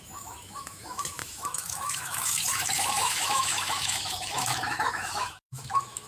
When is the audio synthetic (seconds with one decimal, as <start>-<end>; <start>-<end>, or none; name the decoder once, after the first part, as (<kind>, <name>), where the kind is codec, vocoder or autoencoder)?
0.0-6.1 (autoencoder, DAC-VAE)